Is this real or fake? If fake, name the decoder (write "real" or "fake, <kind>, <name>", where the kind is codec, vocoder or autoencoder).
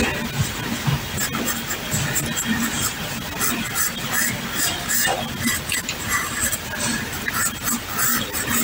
real